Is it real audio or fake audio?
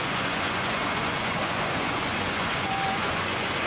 fake